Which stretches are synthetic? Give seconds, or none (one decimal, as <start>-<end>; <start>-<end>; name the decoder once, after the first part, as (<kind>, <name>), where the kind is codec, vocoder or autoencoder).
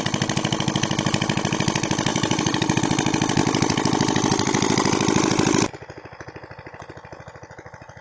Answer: 2.1-2.8 (vocoder, BigVGAN v2)